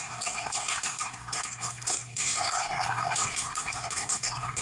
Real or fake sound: fake